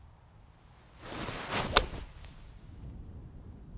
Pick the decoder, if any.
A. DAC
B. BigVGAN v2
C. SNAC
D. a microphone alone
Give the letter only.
D